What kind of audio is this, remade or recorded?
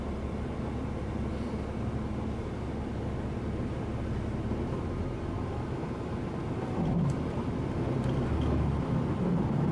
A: recorded